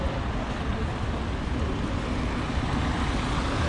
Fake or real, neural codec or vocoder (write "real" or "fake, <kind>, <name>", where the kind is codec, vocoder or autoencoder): real